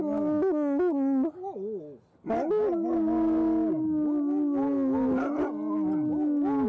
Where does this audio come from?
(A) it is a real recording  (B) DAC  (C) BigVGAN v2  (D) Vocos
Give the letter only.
A